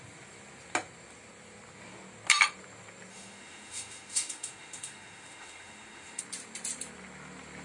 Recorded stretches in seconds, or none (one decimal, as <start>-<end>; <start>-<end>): 0.0-3.1; 6.2-7.6